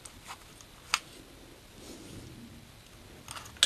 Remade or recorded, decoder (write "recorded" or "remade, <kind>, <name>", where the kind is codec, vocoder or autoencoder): recorded